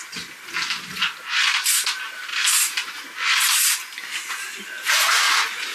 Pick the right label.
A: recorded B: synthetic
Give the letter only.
A